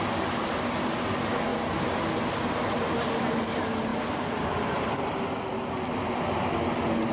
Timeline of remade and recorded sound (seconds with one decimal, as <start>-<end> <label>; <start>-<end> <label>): 0.0-3.9 recorded; 3.9-5.0 remade; 5.0-7.1 recorded